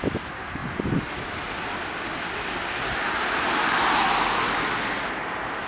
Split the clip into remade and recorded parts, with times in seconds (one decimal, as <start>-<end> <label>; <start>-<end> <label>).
0.0-5.7 recorded

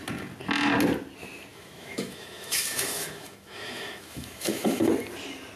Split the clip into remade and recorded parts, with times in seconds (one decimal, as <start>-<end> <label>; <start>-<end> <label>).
0.0-1.5 recorded; 1.5-4.9 remade; 4.9-5.6 recorded

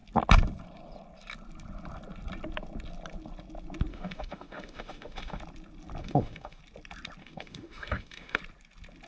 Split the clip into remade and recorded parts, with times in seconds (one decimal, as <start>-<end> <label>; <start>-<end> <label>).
0.0-3.9 recorded; 3.9-5.4 remade; 5.4-6.0 recorded; 6.0-6.6 remade; 6.6-7.2 recorded; 7.2-8.4 remade; 8.4-9.1 recorded

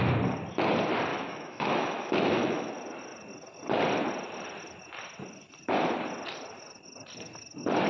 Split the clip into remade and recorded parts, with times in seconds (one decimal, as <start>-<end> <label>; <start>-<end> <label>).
0.0-1.1 recorded; 1.1-2.7 remade; 2.7-7.9 recorded